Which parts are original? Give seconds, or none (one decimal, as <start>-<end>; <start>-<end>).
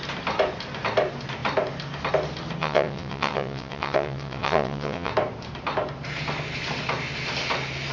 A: 0.0-2.6; 5.1-7.9